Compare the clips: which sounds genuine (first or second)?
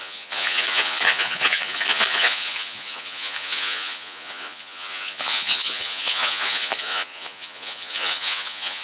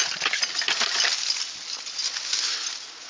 second